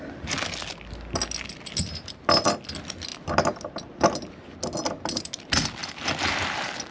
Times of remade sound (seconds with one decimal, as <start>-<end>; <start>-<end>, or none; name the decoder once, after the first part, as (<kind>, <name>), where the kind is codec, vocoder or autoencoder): none